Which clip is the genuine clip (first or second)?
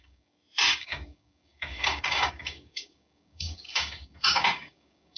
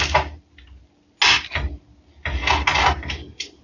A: second